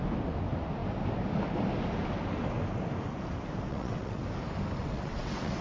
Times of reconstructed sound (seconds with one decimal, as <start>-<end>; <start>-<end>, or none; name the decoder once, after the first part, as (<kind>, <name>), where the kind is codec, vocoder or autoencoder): 3.7-4.2 (vocoder, WaveNeXt); 4.8-5.6